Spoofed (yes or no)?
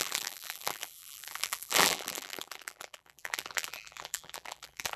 yes